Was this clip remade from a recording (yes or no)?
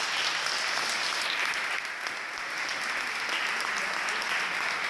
no